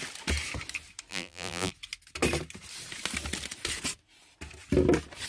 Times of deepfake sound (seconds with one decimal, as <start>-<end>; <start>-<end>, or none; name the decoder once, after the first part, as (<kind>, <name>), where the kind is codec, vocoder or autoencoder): 1.1-1.7 (vocoder, BigVGAN v2)